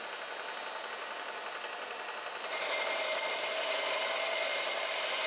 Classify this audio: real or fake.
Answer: real